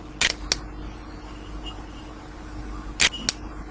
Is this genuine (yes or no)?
yes